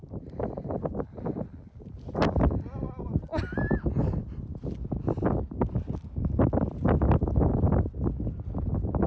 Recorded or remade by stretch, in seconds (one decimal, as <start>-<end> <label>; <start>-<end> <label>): 0.0-9.1 recorded